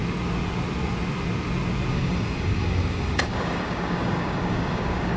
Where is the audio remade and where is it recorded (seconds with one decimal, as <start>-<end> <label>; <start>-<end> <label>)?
0.0-1.9 recorded; 1.9-5.2 remade